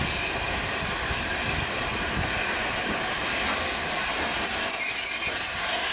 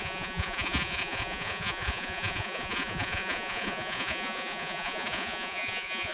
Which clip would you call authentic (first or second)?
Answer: first